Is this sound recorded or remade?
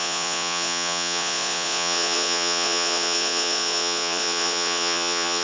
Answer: remade